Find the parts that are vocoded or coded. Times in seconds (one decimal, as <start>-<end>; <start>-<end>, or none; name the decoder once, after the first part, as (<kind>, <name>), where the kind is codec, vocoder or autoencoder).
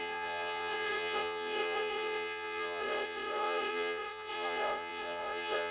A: 0.0-5.7 (vocoder, Vocos)